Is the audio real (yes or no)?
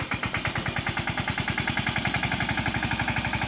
yes